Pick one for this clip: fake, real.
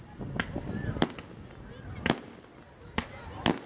real